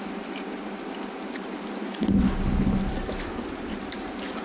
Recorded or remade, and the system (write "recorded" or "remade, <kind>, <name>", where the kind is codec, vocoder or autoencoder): recorded